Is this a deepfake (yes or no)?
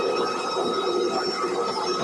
no